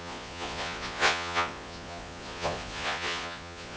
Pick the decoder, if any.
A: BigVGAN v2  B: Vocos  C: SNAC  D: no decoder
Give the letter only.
B